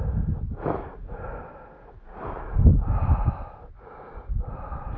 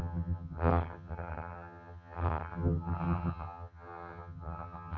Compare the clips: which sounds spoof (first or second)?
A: second